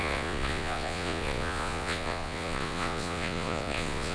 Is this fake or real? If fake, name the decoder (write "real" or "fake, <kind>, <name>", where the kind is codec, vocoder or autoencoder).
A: fake, vocoder, Vocos